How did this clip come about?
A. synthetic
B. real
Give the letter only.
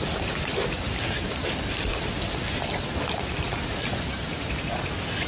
B